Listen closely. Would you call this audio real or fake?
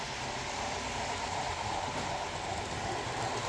real